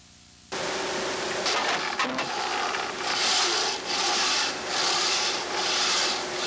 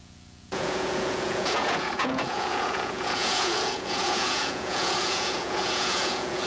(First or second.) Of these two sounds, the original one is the first